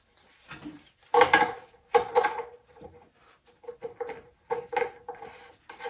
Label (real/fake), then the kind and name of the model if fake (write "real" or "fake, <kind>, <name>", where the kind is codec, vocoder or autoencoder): real